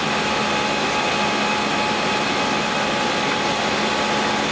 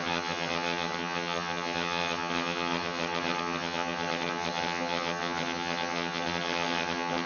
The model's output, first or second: second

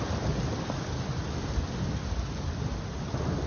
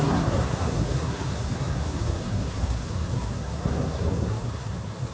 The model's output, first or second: second